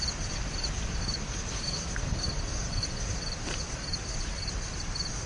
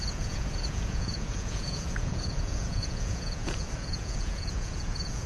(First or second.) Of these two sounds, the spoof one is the second